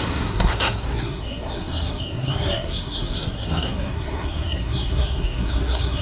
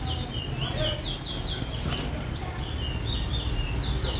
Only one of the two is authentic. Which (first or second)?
second